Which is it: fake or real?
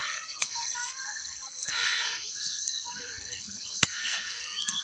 fake